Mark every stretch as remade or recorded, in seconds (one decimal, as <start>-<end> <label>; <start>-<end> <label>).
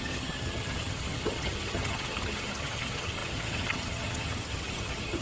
0.0-5.2 remade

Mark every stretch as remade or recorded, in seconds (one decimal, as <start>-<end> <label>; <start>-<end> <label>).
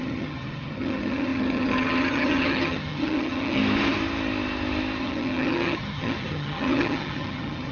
0.0-3.6 remade; 3.6-5.0 recorded; 5.0-7.7 remade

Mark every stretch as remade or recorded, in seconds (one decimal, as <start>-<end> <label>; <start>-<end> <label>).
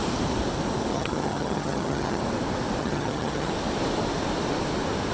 0.0-0.9 recorded; 0.9-2.2 remade; 2.2-2.8 recorded; 2.8-3.5 remade; 3.5-5.1 recorded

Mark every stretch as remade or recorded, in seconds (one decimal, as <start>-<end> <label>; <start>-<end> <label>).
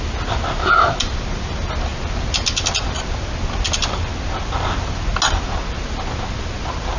0.0-7.0 recorded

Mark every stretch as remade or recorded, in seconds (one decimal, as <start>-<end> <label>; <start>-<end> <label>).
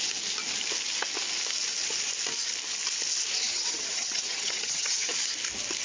0.0-3.4 recorded; 3.4-5.1 remade; 5.1-5.8 recorded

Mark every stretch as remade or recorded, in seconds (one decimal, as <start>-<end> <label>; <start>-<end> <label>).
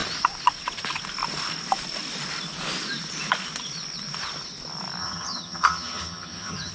0.0-5.0 recorded; 5.0-6.7 remade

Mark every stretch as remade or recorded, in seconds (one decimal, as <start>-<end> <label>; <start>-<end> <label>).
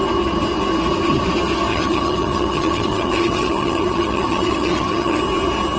0.0-1.7 recorded; 1.7-5.2 remade; 5.2-5.8 recorded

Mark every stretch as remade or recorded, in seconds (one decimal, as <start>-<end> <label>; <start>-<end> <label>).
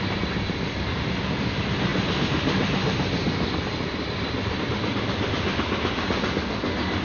0.0-7.0 recorded